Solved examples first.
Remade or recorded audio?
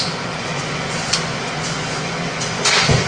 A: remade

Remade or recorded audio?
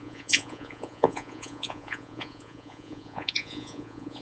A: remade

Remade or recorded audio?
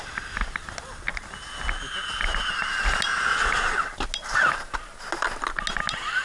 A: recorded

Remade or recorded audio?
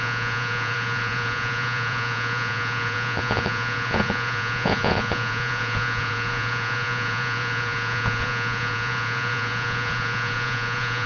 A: remade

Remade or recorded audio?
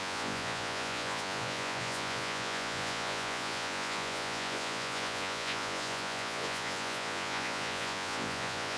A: remade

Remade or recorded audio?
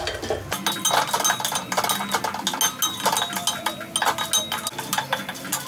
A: recorded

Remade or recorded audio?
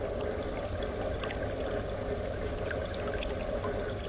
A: recorded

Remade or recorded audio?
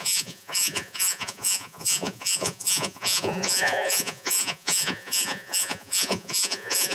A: remade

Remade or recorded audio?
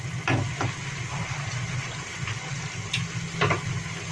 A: recorded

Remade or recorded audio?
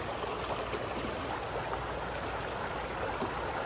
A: recorded